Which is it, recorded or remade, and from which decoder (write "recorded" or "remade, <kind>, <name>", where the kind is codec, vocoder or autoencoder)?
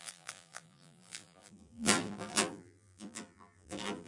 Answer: remade, vocoder, BigVGAN v2